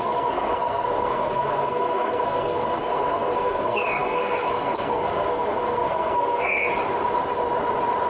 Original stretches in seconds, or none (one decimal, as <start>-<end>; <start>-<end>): 6.7-8.1